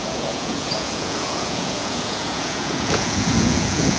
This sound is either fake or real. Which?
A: fake